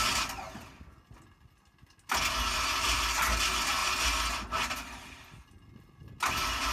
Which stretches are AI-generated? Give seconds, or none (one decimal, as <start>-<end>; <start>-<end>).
none